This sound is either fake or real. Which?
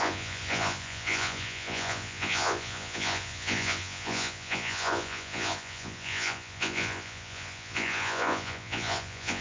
fake